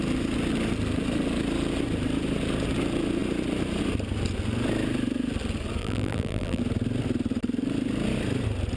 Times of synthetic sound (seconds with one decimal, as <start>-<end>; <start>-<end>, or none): 5.8-6.6